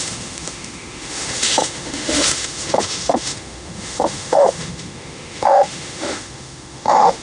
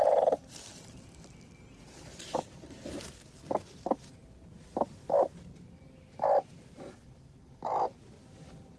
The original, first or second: second